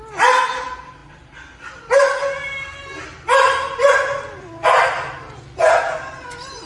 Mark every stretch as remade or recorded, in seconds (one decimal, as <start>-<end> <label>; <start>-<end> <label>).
0.0-6.7 recorded